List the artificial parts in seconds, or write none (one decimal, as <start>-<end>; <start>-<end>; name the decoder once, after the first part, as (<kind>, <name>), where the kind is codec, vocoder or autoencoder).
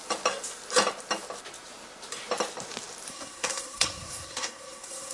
3.1-5.1 (codec, SNAC)